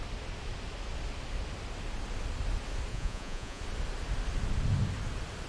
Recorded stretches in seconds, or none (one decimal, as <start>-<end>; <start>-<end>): 0.0-2.9; 3.6-5.5